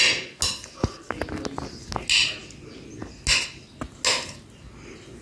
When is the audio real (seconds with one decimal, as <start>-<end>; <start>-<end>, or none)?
0.0-5.2

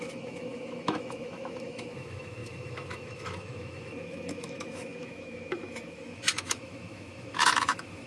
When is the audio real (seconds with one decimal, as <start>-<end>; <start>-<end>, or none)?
none

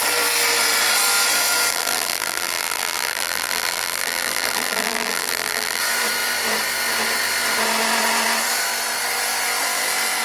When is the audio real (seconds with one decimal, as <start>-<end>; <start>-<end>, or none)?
0.0-1.7; 5.8-10.2